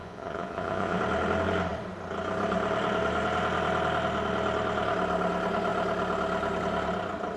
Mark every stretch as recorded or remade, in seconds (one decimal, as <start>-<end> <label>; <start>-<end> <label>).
0.0-1.0 remade; 1.0-7.4 recorded